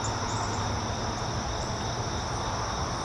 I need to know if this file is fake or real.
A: real